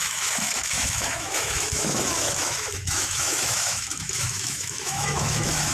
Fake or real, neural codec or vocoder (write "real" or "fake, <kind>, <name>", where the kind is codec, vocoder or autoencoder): fake, autoencoder, DAC-VAE